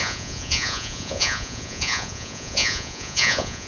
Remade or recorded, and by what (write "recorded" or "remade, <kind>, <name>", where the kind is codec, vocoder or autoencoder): remade, vocoder, Vocos